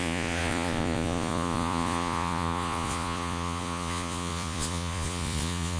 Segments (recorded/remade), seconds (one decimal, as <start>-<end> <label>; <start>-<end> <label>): 0.0-5.8 remade

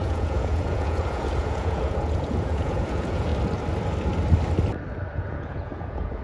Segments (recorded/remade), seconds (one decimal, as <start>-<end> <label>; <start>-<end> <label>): 0.0-3.3 remade; 3.3-5.2 recorded; 5.2-6.2 remade

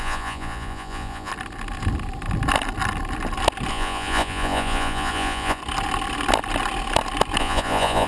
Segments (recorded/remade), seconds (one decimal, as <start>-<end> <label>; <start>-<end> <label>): 0.0-1.3 remade; 1.3-3.7 recorded; 3.7-5.6 remade; 5.6-7.4 recorded; 7.4-8.1 remade

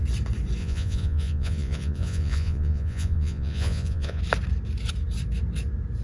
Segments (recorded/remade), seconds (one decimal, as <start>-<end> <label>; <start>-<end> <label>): 0.0-0.6 recorded; 0.6-4.2 remade; 4.2-6.0 recorded

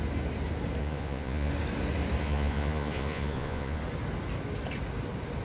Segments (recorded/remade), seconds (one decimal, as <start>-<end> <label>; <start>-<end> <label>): 0.0-0.8 recorded; 0.8-1.5 remade; 1.5-2.2 recorded; 2.2-3.8 remade; 3.8-5.4 recorded

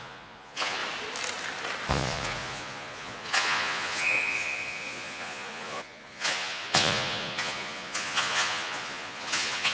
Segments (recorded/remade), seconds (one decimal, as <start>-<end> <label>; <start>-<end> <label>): 0.0-0.8 remade; 0.8-1.9 recorded; 1.9-9.7 remade